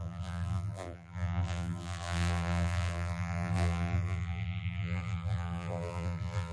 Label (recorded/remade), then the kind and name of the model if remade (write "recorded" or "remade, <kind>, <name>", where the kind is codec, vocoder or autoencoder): remade, vocoder, BigVGAN v2